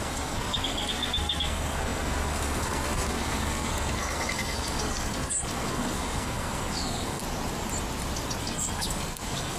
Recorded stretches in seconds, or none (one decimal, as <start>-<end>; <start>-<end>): 7.2-8.4